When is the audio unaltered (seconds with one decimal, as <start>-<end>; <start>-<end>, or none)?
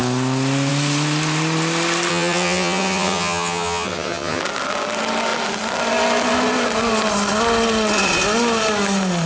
0.0-2.1; 4.4-9.3